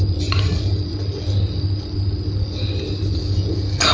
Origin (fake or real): real